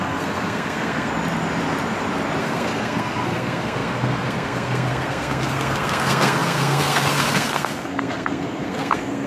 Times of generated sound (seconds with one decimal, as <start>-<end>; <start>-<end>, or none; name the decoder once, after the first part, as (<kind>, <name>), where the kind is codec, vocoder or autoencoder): 0.0-1.1 (codec, SNAC); 2.4-9.3